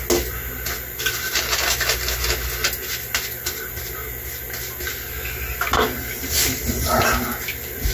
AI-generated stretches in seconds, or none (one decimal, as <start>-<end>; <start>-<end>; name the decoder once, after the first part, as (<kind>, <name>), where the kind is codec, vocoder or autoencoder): none